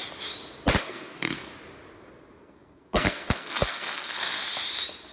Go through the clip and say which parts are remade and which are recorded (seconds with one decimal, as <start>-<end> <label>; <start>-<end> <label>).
0.0-0.8 recorded; 0.8-1.5 remade; 1.5-2.4 recorded; 2.4-4.4 remade; 4.4-5.1 recorded